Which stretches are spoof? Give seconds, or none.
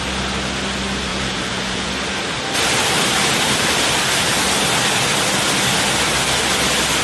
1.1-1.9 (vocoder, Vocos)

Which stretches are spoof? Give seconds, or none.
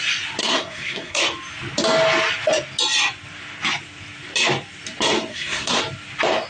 0.4-1.2 (codec, SNAC); 5.3-5.8